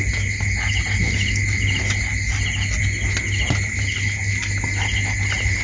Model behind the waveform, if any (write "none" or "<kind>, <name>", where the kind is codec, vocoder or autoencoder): none